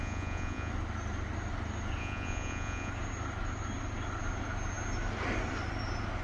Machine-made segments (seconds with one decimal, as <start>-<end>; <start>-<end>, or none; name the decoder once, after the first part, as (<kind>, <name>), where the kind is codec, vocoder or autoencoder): 0.0-0.7 (vocoder, Vocos); 2.0-2.9